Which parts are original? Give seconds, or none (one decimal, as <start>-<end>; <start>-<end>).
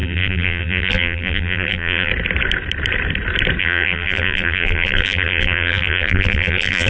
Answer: 2.1-3.6